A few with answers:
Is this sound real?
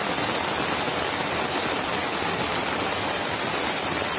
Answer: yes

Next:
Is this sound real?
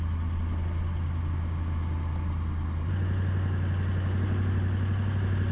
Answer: yes